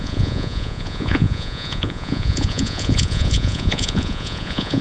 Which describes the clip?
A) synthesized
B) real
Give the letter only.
A